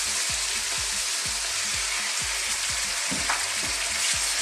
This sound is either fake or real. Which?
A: real